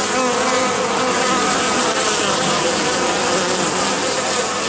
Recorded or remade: recorded